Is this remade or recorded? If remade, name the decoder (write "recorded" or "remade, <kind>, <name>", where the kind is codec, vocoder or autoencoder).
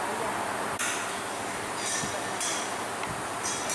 recorded